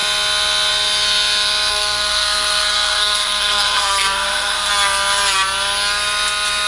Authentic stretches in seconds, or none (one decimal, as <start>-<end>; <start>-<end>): 0.0-1.7; 4.7-6.7

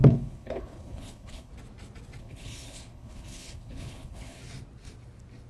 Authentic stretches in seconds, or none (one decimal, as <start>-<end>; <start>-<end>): 1.5-2.2; 4.4-5.5

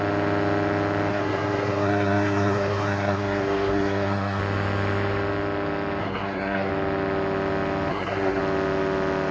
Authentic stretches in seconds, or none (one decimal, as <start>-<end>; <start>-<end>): 0.0-1.1; 4.4-6.0; 6.7-7.9; 8.4-9.3